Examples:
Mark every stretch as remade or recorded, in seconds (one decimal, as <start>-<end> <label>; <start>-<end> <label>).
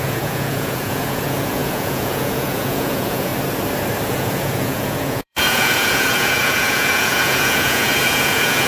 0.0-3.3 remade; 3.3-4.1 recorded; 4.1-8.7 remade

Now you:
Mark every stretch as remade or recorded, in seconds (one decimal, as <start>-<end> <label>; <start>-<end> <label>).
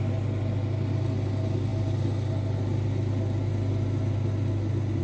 0.0-5.0 recorded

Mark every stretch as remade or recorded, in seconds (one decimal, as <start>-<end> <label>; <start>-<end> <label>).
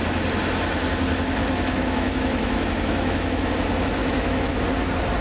0.0-1.4 recorded; 1.4-3.5 remade; 3.5-4.0 recorded; 4.0-4.6 remade; 4.6-5.2 recorded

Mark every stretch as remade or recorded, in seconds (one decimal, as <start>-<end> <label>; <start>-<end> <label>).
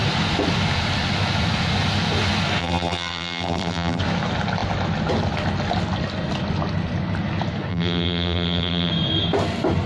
0.0-2.6 recorded; 2.6-4.0 remade; 4.0-7.7 recorded; 7.7-8.9 remade; 8.9-9.9 recorded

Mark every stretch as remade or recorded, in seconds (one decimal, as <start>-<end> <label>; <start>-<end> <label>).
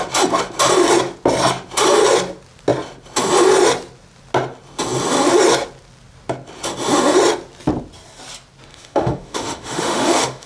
0.0-8.7 recorded; 8.7-10.5 remade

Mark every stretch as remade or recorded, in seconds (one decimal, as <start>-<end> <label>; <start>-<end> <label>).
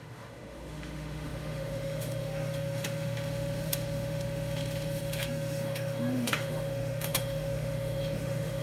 0.0-8.6 remade